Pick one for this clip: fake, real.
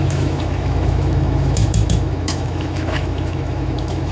fake